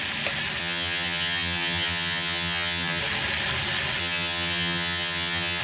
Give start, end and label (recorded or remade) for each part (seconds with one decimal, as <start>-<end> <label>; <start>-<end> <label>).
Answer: 0.0-0.6 recorded; 0.6-3.0 remade; 3.0-4.0 recorded; 4.0-5.6 remade